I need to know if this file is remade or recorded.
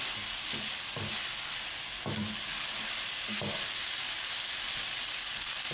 recorded